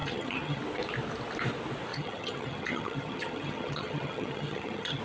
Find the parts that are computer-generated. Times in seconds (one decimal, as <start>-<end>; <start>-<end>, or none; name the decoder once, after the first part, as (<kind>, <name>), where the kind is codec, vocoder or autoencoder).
0.0-0.6 (vocoder, HiFi-GAN); 1.9-5.0